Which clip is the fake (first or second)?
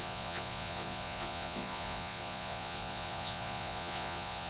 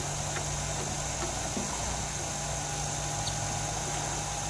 first